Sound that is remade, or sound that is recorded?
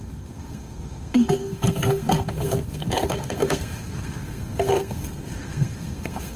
remade